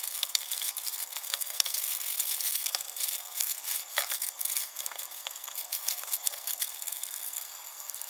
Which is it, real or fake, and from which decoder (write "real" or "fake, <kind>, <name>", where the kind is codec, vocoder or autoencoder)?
fake, codec, SNAC